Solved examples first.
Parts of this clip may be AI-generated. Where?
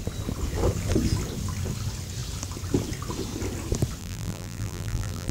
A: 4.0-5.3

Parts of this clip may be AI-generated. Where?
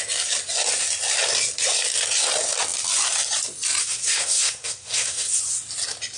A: 3.8-5.4